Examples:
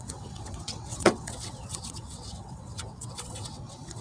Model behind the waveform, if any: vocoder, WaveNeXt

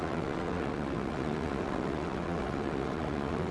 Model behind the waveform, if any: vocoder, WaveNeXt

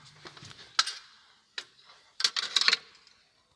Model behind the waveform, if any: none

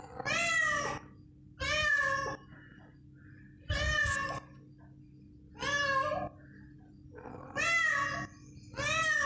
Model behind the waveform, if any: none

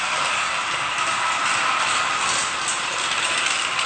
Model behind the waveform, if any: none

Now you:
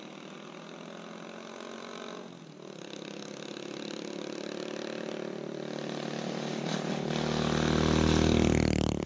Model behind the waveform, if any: none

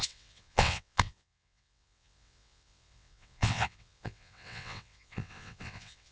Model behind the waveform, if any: vocoder, WaveNeXt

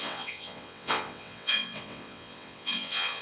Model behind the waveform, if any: vocoder, WaveNeXt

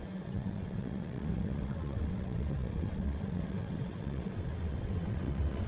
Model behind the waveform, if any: vocoder, WaveNeXt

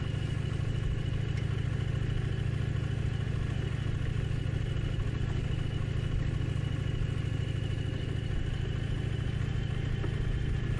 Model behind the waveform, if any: none